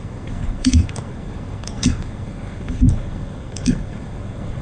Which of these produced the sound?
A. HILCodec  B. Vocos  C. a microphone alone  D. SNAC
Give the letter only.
D